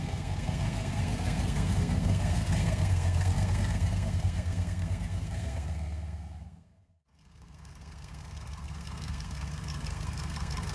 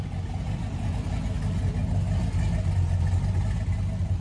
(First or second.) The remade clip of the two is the first